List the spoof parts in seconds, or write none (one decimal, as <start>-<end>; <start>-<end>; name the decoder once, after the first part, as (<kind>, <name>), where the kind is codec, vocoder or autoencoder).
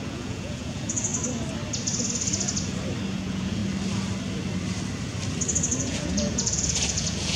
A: 0.0-1.1 (vocoder, Vocos); 3.1-3.6; 5.8-7.4